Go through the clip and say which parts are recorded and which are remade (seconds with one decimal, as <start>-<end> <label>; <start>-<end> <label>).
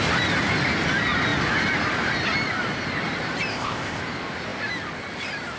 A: 0.0-3.5 recorded; 3.5-4.0 remade; 4.0-5.6 recorded